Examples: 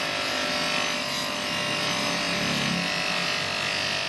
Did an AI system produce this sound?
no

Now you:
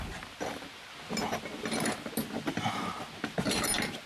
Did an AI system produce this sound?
no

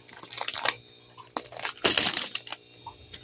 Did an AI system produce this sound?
no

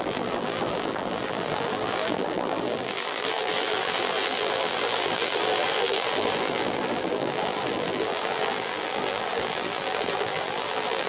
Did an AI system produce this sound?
yes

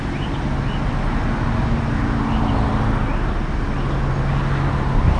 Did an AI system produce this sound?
no